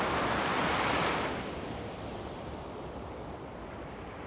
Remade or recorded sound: recorded